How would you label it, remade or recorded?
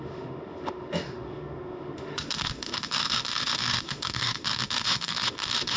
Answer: remade